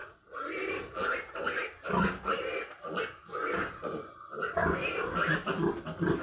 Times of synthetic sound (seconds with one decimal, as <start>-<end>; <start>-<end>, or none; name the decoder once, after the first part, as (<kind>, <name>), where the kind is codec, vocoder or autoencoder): 0.0-0.5 (vocoder, Vocos)